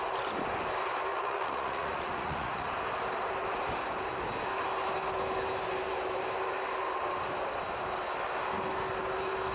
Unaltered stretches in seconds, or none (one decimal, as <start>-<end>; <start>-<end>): 0.0-1.1; 2.7-9.5